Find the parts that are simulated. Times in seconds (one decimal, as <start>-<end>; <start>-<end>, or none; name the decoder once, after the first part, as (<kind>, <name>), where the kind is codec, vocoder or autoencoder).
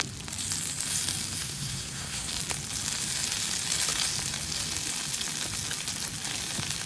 1.4-2.3 (codec, SNAC)